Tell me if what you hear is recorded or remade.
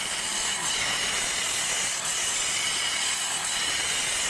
recorded